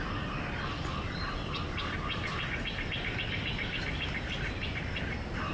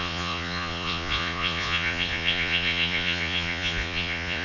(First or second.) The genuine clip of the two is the first